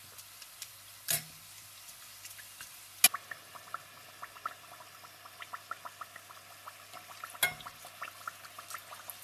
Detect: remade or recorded recorded